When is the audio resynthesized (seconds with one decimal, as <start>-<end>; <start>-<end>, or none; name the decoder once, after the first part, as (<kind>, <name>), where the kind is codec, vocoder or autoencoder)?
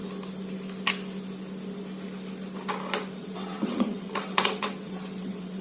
3.2-5.6 (vocoder, WaveNeXt)